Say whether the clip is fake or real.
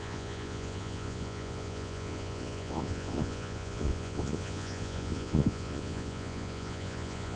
fake